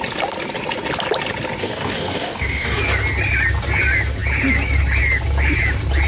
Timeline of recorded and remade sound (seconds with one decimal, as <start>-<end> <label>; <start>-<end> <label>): 0.0-1.6 recorded; 1.6-2.8 remade; 2.8-6.1 recorded